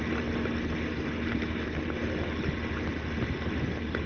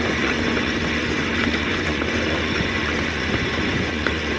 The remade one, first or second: second